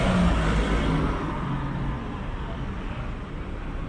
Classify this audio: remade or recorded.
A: recorded